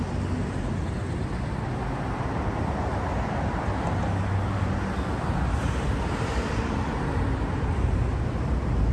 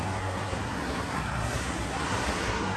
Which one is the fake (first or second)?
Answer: second